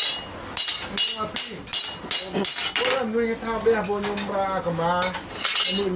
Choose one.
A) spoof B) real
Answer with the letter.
B